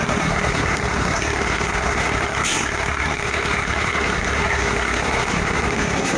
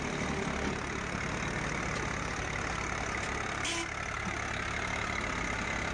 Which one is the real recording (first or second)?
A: second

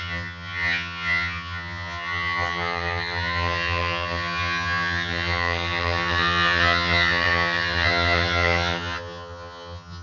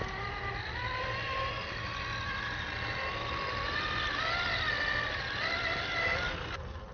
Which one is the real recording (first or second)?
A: second